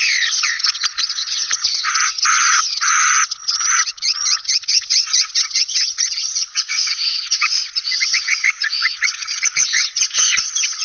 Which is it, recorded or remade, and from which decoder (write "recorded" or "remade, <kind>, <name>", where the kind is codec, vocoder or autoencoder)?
remade, vocoder, Vocos